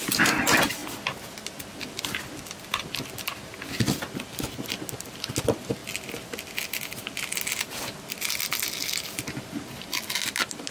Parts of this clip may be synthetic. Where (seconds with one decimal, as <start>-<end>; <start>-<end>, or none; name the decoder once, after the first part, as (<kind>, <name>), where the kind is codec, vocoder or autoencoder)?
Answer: none